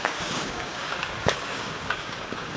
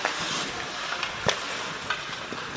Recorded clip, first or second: second